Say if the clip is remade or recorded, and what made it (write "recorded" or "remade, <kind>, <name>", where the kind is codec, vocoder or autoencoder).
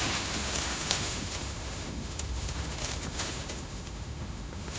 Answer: remade, autoencoder, DAC-VAE